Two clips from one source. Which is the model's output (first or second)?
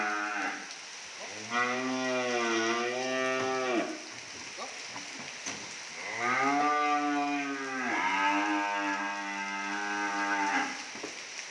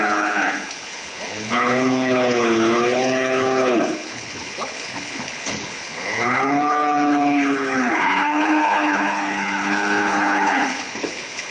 second